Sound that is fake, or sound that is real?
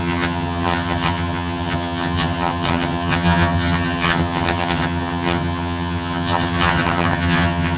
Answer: fake